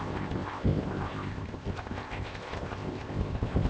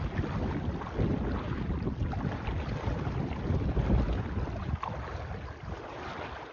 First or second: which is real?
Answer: second